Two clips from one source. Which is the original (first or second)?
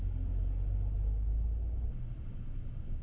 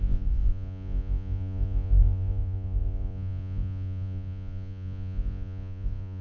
first